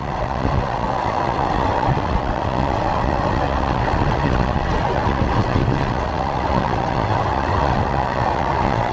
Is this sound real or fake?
fake